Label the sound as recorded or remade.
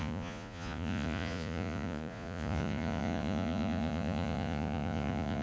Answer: remade